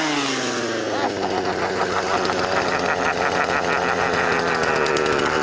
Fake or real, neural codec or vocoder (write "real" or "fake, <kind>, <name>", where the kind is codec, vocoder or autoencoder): real